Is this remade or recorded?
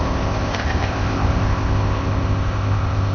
remade